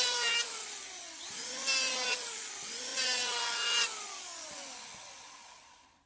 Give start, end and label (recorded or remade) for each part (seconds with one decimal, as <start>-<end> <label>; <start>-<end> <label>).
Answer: 0.0-6.1 recorded